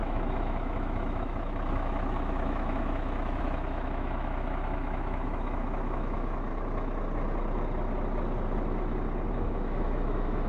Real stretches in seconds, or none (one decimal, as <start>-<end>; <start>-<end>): 6.5-9.3